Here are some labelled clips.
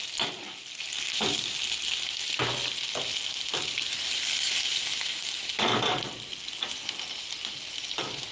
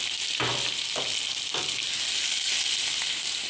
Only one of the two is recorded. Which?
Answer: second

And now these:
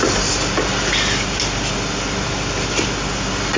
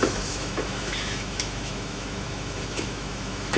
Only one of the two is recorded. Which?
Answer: first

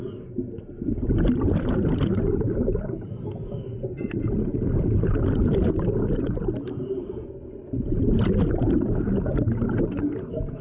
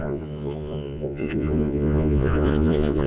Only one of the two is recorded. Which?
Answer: first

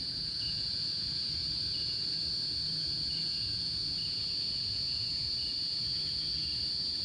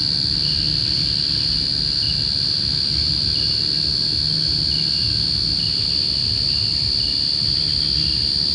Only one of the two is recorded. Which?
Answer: second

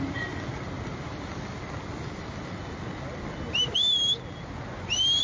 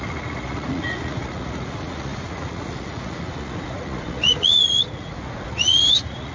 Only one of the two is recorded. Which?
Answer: first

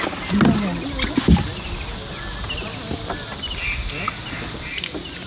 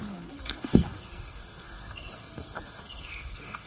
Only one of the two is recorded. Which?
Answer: first